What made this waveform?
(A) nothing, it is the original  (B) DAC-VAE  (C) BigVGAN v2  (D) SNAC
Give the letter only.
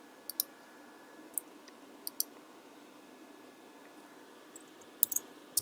A